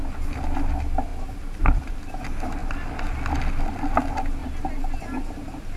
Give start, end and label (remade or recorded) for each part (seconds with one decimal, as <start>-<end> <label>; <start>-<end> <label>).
0.0-1.1 recorded; 1.1-1.9 remade; 1.9-5.8 recorded